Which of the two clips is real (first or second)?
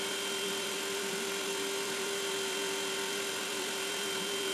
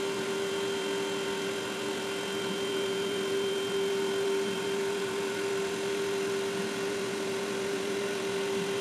second